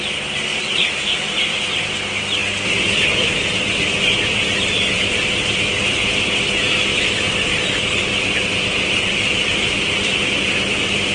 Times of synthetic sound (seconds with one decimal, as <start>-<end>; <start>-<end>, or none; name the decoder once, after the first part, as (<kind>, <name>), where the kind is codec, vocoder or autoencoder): 0.5-1.7 (vocoder, BigVGAN v2); 6.9-10.1